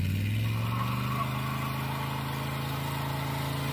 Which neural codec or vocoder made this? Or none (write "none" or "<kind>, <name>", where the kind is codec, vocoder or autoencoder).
none